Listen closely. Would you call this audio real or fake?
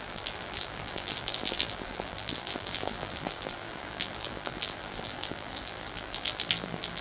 fake